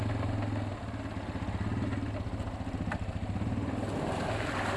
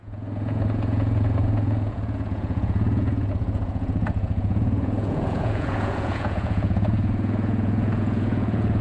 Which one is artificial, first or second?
second